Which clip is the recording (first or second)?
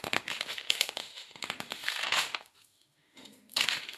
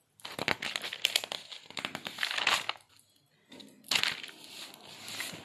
second